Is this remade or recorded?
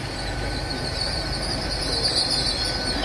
recorded